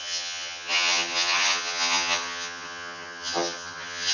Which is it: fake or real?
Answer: fake